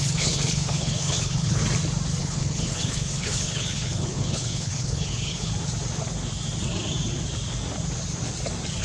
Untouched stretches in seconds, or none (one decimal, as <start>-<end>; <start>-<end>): 1.6-2.2; 5.5-8.8